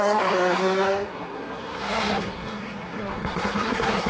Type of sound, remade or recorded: remade